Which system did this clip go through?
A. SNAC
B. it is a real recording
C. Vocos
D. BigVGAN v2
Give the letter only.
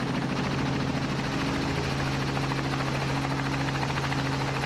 B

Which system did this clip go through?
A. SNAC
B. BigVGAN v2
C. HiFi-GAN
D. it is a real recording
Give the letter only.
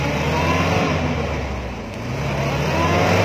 D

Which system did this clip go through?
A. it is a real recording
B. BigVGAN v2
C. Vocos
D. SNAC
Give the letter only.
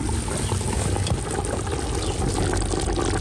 A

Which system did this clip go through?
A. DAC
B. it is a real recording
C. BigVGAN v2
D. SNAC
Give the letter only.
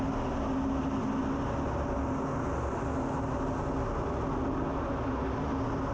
B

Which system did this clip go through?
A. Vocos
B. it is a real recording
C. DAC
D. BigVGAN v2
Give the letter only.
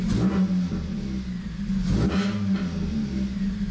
B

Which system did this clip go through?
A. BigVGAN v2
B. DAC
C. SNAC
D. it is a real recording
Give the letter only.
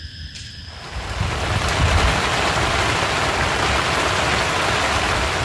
D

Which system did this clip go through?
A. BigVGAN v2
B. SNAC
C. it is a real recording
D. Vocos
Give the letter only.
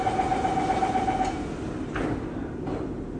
C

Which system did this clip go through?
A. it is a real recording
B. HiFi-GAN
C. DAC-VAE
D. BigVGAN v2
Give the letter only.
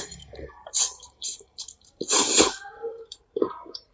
D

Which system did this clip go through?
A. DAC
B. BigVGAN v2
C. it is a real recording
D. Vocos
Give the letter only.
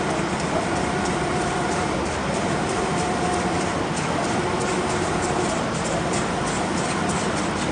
B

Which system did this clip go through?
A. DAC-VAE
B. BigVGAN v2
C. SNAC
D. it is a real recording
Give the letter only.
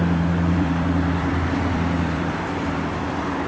B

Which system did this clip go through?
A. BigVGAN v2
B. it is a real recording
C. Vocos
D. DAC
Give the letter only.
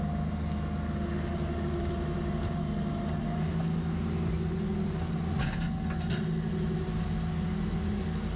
B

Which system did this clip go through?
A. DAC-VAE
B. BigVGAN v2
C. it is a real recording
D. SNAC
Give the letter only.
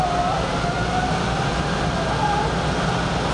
C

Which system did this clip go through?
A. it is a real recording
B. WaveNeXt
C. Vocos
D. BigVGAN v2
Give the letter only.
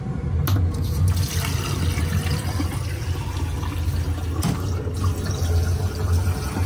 A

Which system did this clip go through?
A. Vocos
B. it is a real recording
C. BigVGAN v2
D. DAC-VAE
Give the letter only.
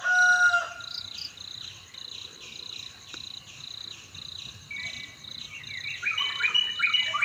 B